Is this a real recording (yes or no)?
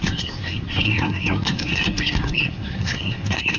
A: no